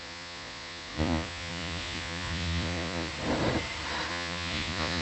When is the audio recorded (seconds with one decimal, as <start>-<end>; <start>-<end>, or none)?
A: 3.1-4.1